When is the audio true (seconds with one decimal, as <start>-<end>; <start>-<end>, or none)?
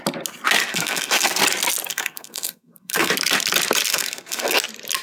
0.0-0.7; 1.4-1.9; 3.1-3.9; 4.6-5.0